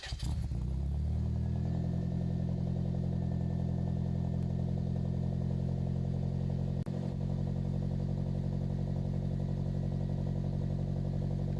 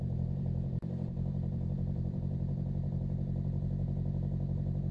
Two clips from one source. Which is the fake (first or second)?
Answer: second